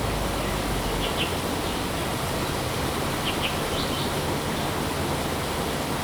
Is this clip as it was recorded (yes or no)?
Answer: yes